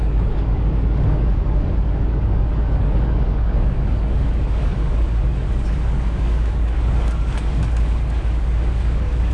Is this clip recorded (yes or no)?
no